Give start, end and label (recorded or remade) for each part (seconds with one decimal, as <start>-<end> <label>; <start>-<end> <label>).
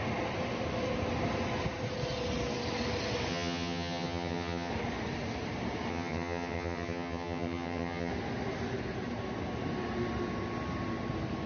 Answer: 0.0-3.3 recorded; 3.3-4.7 remade; 4.7-5.9 recorded; 5.9-8.1 remade; 8.1-11.5 recorded